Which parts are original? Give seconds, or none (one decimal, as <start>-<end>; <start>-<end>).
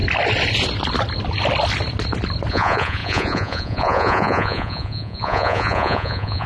0.0-2.5